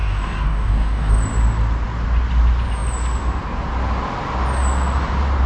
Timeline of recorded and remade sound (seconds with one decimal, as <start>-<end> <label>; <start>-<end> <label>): 0.0-1.1 remade; 1.1-5.5 recorded